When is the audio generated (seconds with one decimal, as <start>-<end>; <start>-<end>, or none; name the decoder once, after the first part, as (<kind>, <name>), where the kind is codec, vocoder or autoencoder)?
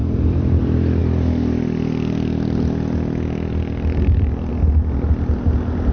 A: 0.0-0.6 (vocoder, BigVGAN v2)